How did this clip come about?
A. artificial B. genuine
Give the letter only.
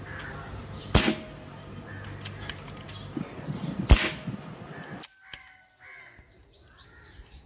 B